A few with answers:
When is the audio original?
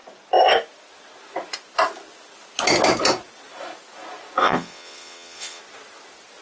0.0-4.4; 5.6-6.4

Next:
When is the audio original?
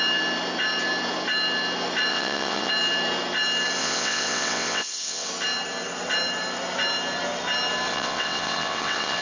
0.0-2.1; 2.7-3.8; 5.3-7.9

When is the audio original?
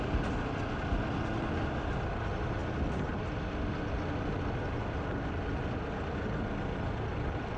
0.0-7.6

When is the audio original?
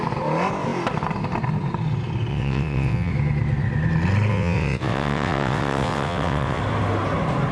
0.0-2.3; 3.1-4.3; 6.6-7.5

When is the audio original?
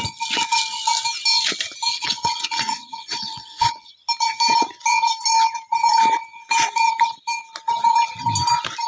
0.0-1.9; 3.9-8.9